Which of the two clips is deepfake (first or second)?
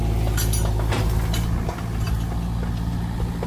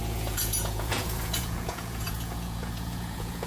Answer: second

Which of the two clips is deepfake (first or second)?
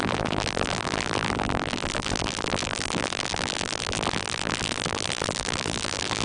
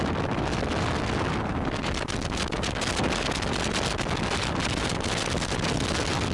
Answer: first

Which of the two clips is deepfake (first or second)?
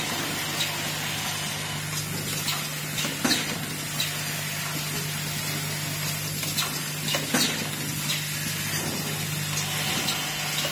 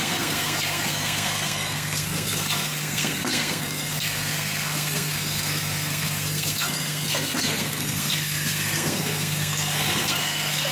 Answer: second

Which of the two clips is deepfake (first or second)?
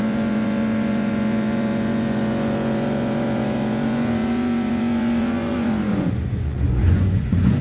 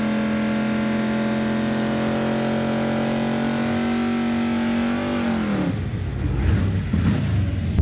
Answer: first